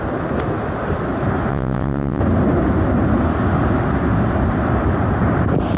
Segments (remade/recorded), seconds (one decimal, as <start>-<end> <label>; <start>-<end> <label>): 0.0-1.5 recorded; 1.5-2.2 remade; 2.2-5.8 recorded

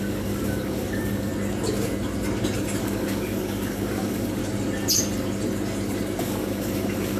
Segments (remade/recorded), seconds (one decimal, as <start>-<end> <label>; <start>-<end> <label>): 0.0-1.3 remade; 1.3-2.8 recorded; 2.8-4.4 remade; 4.4-6.2 recorded; 6.2-7.2 remade